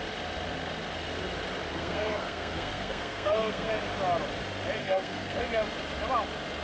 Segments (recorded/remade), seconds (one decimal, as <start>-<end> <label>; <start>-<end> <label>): 0.0-1.7 recorded; 1.7-3.7 remade; 3.7-4.8 recorded; 4.8-5.4 remade; 5.4-6.6 recorded